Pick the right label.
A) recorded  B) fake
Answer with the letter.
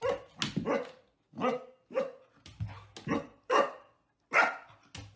A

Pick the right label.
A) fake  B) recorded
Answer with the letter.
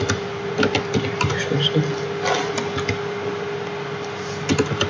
B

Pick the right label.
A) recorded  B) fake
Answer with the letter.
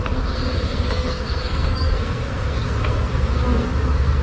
B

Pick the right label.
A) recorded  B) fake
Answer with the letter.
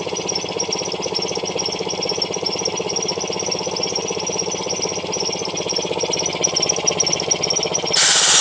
A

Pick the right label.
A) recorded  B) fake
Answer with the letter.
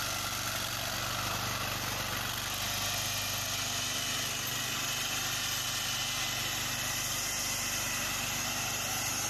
A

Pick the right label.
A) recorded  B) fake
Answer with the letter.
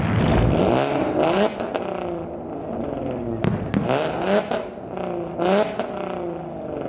A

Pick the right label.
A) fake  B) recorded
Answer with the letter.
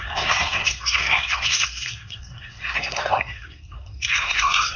A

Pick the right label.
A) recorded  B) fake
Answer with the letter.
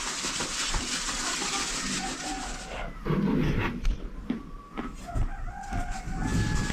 A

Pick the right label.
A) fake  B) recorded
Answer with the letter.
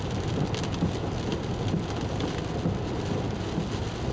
B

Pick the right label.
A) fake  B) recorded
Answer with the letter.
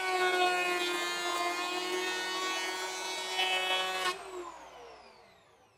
B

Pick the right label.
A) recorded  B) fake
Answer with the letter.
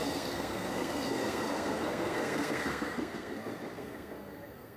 B